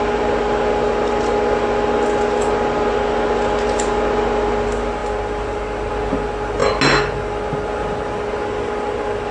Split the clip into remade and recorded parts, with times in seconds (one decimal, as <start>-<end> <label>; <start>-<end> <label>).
0.0-9.3 recorded